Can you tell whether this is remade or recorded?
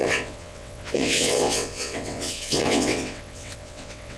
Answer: remade